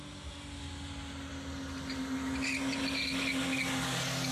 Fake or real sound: real